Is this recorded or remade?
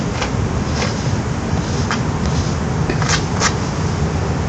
recorded